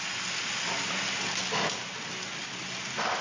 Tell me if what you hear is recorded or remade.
recorded